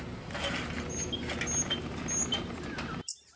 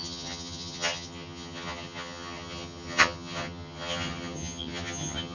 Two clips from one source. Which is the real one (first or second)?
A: first